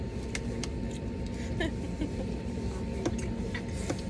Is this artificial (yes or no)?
no